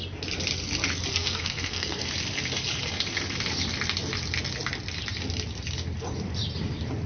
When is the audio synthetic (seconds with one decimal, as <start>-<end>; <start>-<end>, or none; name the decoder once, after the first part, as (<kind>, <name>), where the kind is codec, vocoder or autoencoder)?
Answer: 1.1-2.1 (codec, SNAC)